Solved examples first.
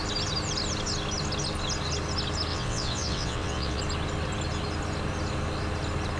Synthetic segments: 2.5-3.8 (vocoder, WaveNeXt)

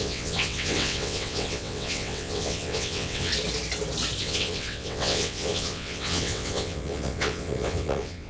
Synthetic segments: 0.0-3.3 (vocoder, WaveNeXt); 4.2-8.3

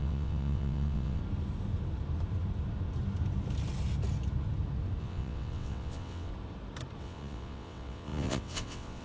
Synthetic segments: 0.0-1.2 (vocoder, WaveNeXt); 5.0-6.3; 7.0-9.0